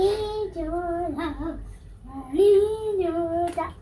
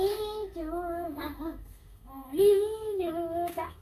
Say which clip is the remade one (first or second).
second